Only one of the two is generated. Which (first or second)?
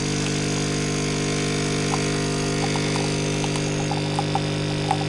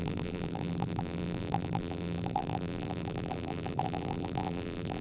second